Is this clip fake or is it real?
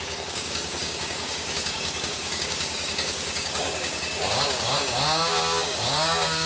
fake